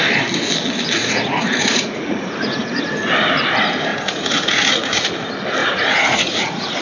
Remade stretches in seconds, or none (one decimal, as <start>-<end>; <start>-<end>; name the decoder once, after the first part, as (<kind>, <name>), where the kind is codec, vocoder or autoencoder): 1.0-2.8 (vocoder, Vocos); 3.9-5.1; 5.6-6.8

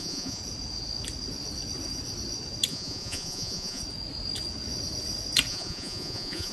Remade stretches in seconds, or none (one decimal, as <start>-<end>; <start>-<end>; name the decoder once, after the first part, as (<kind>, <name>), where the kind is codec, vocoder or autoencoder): 0.0-0.4 (vocoder, Vocos); 2.7-3.8; 5.5-6.5

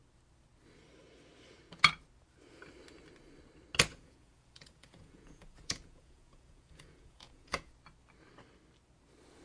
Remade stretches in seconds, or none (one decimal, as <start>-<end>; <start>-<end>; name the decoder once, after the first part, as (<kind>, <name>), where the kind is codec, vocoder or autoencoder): 3.9-7.7 (vocoder, Vocos)

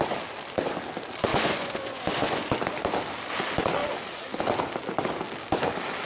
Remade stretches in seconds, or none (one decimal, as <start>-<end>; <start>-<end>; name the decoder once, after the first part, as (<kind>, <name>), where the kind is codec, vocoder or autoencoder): 1.3-2.5 (vocoder, Vocos)

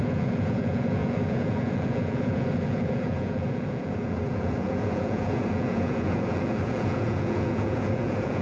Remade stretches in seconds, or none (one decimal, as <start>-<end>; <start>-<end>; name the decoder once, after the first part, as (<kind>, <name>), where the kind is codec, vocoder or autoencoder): 0.0-8.4 (vocoder, Vocos)